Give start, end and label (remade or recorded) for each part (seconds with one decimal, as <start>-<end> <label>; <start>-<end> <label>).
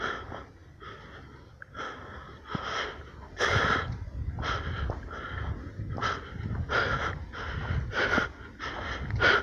0.0-9.4 recorded